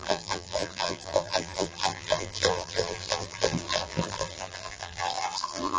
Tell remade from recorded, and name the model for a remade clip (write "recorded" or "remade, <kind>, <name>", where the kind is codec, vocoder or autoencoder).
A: remade, vocoder, BigVGAN v2